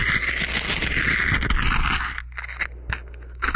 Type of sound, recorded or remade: recorded